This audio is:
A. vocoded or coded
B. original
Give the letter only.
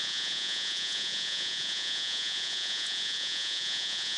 A